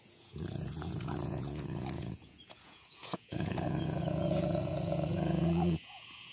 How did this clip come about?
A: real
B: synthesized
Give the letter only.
B